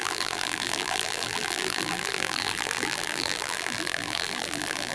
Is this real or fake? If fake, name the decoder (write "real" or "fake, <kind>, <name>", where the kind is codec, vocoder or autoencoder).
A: fake, vocoder, BigVGAN v2